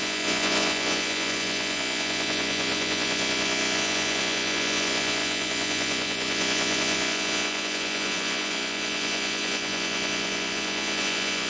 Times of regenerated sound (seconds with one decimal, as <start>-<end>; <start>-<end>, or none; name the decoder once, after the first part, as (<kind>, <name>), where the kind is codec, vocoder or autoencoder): 0.0-11.5 (vocoder, Vocos)